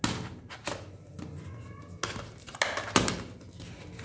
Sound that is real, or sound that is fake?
real